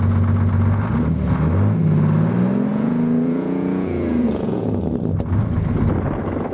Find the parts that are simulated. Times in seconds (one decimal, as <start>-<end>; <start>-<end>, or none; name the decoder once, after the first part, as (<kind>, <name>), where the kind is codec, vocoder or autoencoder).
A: 2.7-4.8 (vocoder, Vocos)